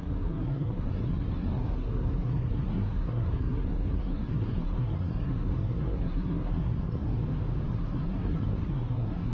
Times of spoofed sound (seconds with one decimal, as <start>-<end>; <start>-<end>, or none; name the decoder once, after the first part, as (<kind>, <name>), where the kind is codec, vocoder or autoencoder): 0.0-7.2 (codec, SNAC); 7.7-9.3